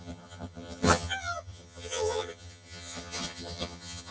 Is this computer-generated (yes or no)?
yes